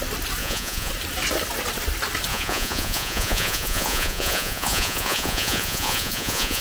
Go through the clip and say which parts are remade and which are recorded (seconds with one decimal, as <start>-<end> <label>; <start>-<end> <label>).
0.0-0.4 recorded; 0.4-0.9 remade; 0.9-2.3 recorded; 2.3-6.6 remade